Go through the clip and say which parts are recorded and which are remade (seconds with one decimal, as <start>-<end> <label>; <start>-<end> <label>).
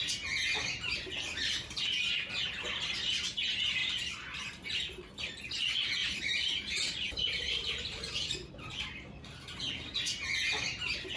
0.0-3.8 recorded; 3.8-5.0 remade; 5.0-6.0 recorded; 6.0-8.5 remade; 8.5-11.2 recorded